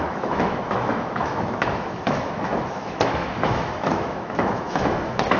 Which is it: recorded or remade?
remade